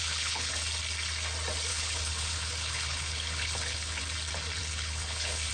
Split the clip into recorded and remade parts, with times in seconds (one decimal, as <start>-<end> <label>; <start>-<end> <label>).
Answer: 0.0-0.5 remade; 0.5-1.7 recorded; 1.7-4.0 remade; 4.0-4.6 recorded; 4.6-5.5 remade